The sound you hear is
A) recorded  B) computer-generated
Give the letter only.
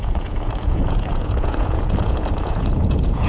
B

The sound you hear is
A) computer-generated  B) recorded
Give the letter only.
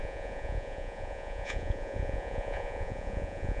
A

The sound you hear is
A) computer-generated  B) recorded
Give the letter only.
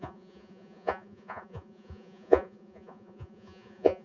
A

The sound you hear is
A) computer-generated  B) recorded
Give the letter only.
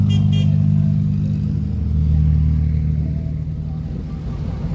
B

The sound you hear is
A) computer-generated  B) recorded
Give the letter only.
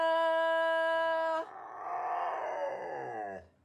B